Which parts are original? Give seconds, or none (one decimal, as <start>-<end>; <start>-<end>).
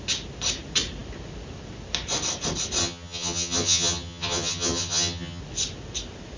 0.0-2.8; 5.4-6.4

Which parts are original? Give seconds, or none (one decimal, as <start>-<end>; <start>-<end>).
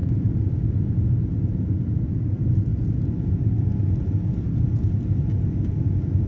0.0-6.3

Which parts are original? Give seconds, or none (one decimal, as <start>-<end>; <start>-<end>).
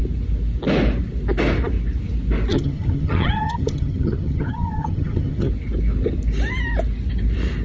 0.0-2.5; 5.5-7.6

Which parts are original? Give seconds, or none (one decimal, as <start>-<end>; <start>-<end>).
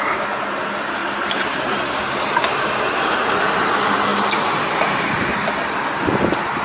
0.0-6.6